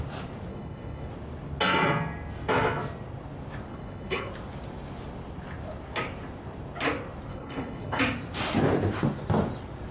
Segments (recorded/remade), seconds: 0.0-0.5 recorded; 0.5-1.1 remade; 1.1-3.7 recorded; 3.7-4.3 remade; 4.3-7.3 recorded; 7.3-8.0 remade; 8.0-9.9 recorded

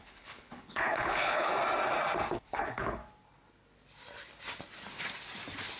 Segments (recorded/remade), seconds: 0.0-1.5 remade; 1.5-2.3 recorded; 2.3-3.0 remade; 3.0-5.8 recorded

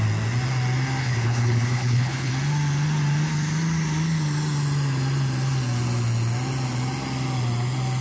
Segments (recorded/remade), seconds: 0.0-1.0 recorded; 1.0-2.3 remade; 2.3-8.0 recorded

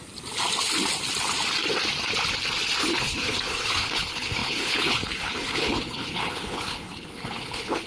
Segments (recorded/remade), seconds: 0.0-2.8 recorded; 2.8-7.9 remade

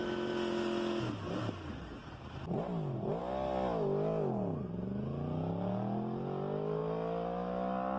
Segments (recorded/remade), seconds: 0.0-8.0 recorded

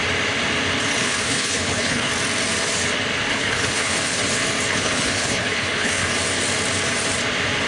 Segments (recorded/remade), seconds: 0.0-1.0 recorded; 1.0-2.1 remade; 2.1-3.3 recorded; 3.3-4.2 remade; 4.2-4.7 recorded; 4.7-6.1 remade; 6.1-7.7 recorded